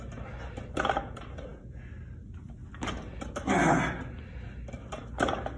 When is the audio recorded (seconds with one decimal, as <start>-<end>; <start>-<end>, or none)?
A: 0.0-5.6